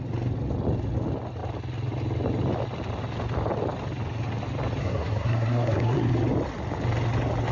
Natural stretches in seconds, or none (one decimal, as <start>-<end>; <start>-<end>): 0.0-4.8; 6.1-7.5